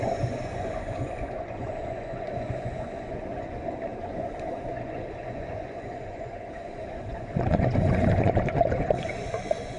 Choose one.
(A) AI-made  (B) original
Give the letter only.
A